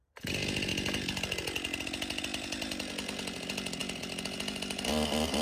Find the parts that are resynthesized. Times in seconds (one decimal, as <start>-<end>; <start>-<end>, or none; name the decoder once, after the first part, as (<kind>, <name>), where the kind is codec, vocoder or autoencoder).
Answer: none